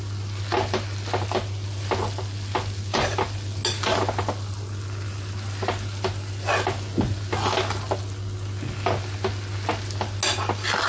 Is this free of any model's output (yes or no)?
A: yes